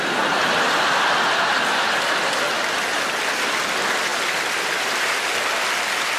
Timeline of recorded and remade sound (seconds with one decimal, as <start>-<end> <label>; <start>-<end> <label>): 0.0-6.2 recorded